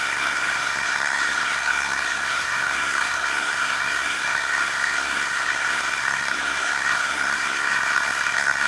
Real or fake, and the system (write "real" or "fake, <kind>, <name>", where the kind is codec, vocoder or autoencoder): fake, codec, SNAC